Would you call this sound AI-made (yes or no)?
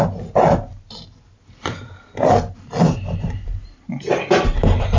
no